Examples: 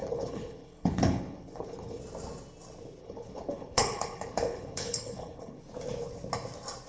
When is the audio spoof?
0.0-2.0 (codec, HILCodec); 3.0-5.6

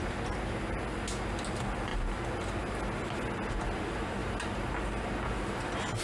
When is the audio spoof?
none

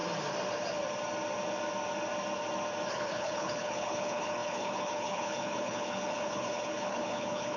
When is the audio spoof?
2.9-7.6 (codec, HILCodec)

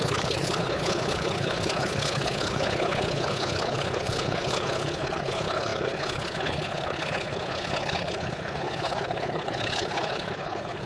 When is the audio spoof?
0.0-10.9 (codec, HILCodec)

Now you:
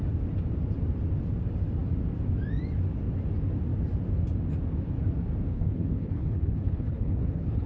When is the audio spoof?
5.5-7.7 (codec, HILCodec)